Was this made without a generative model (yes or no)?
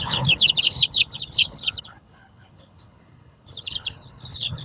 no